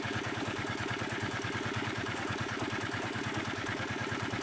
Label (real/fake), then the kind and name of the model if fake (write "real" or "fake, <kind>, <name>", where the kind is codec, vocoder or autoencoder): fake, codec, DAC